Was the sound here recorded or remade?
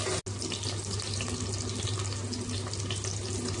recorded